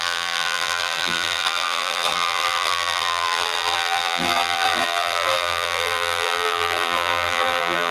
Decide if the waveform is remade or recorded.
remade